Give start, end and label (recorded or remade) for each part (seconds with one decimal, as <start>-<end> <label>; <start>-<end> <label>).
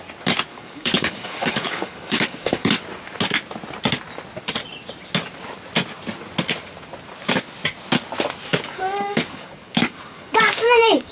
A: 0.0-0.5 recorded; 0.5-2.7 remade; 2.7-8.5 recorded; 8.5-11.1 remade